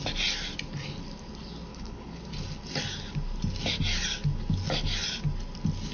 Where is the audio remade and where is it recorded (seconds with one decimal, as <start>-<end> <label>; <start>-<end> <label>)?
0.0-1.7 recorded; 1.7-2.2 remade; 2.2-5.9 recorded